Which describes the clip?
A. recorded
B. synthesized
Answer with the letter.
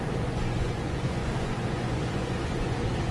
B